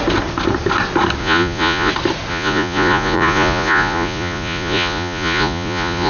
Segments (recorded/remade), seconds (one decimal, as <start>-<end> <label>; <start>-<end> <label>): 0.0-1.2 recorded; 1.2-1.9 remade; 1.9-2.3 recorded; 2.3-6.1 remade